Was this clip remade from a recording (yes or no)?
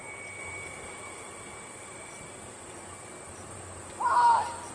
no